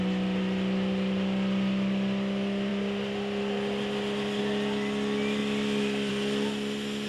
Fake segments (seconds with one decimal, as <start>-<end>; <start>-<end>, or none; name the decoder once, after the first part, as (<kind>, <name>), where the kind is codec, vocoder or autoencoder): none